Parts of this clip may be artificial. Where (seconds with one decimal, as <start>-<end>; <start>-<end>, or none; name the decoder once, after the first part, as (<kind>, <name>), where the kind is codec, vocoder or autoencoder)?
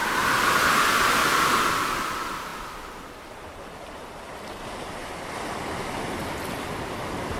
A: 0.0-7.4 (vocoder, BigVGAN v2)